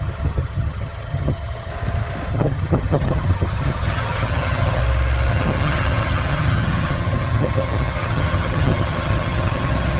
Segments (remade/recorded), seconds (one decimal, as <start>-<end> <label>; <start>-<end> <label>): 0.0-1.7 remade; 1.7-2.3 recorded; 2.3-4.8 remade; 4.8-5.3 recorded; 5.3-10.0 remade